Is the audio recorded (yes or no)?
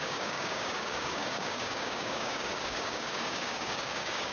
no